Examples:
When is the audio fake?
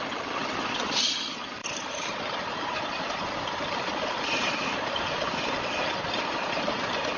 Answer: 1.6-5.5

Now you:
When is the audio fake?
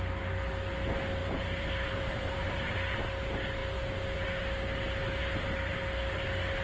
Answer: 1.2-2.8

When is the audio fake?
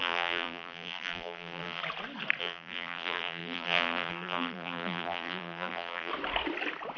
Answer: 0.0-1.8; 2.4-6.1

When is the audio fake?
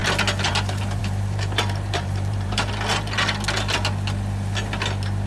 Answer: 1.0-2.7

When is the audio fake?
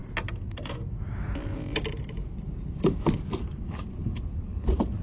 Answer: 2.0-5.0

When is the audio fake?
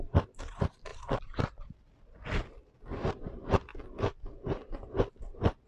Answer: 0.0-0.9; 3.1-3.7; 5.1-5.7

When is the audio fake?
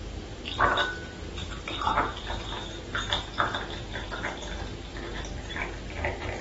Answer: none